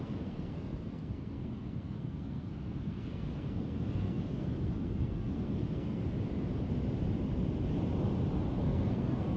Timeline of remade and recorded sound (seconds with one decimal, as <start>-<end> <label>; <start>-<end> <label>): 0.0-6.0 remade; 6.0-8.6 recorded; 8.6-9.4 remade